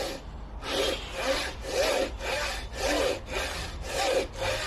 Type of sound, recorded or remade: recorded